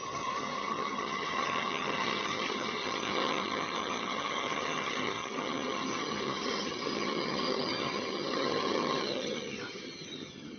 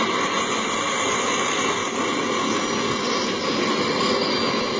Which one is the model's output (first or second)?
first